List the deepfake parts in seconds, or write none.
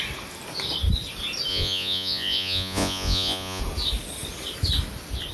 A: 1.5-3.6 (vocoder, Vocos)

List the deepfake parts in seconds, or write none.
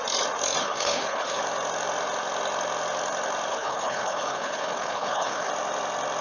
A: 0.6-1.4 (codec, HILCodec); 3.5-5.5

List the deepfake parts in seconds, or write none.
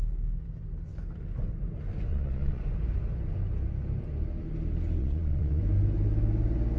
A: 2.1-2.6 (vocoder, Vocos); 5.0-5.6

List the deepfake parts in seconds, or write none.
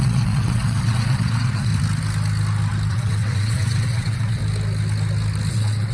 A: 0.0-1.7 (vocoder, WaveNeXt); 2.9-4.4; 5.5-5.9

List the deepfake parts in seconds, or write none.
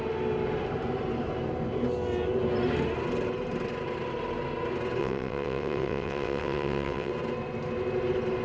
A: 5.0-7.1 (vocoder, WaveNeXt)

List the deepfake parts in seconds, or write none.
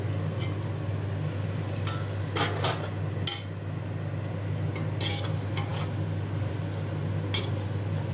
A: none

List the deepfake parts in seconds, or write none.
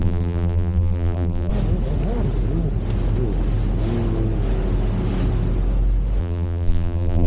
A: 0.0-1.5 (vocoder, BigVGAN v2); 6.2-7.3